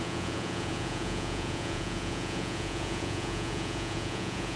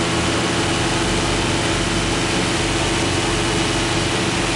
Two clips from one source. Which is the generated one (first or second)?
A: first